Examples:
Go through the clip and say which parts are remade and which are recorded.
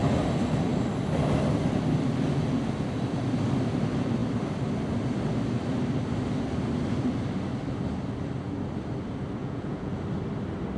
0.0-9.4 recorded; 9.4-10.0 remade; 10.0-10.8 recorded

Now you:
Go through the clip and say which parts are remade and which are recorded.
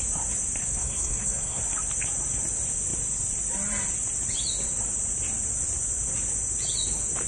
0.0-0.6 recorded; 0.6-1.6 remade; 1.6-7.3 recorded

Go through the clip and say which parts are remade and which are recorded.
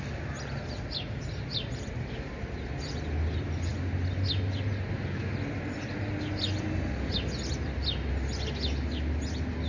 0.0-9.7 recorded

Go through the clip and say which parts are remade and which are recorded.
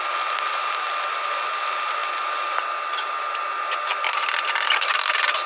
0.0-5.5 recorded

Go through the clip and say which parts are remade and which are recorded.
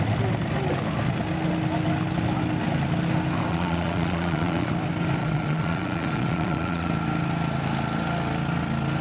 0.0-3.5 recorded; 3.5-4.7 remade; 4.7-5.2 recorded; 5.2-6.9 remade; 6.9-9.0 recorded